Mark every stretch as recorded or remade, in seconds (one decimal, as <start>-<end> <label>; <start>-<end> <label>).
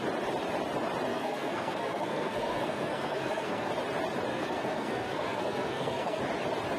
0.0-1.1 recorded; 1.1-3.7 remade; 3.7-4.3 recorded; 4.3-6.2 remade; 6.2-6.8 recorded